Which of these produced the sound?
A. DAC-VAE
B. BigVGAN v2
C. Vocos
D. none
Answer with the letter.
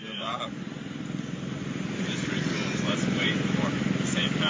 B